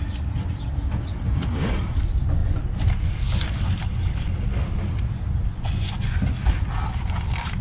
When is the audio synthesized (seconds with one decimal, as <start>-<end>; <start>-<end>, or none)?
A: 5.5-6.2